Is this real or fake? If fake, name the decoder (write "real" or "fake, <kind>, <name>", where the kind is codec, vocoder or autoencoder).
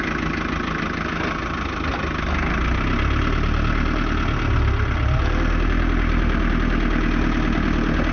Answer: real